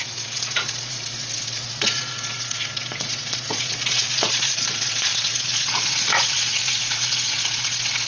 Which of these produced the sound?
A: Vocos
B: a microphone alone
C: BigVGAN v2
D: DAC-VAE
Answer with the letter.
A